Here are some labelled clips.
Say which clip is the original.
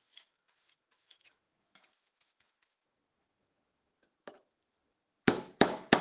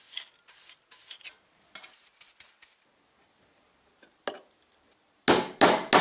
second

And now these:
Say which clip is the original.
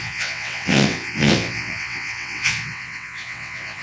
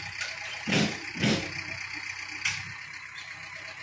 second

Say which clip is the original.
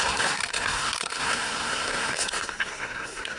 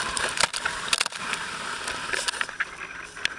second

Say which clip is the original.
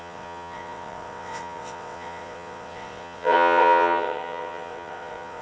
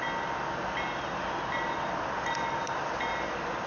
second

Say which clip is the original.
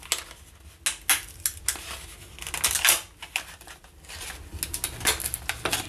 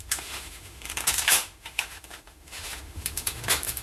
first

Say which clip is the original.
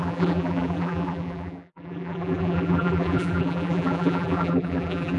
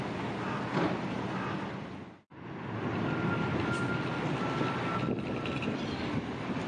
second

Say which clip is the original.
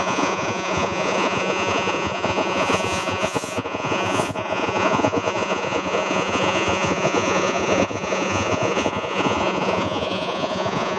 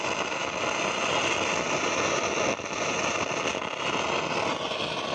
second